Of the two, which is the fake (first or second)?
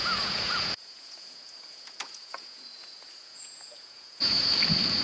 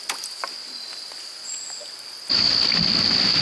first